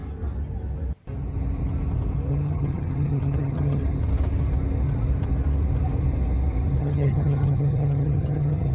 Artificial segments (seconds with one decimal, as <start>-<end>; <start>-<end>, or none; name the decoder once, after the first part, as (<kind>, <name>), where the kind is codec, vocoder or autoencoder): 2.3-3.8 (vocoder, HiFi-GAN); 6.8-8.7